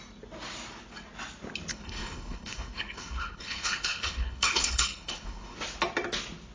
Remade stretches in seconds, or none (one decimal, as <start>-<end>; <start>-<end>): 1.7-5.6